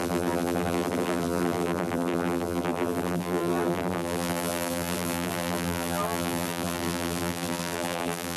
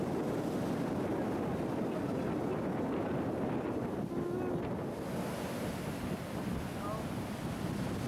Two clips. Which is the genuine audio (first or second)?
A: second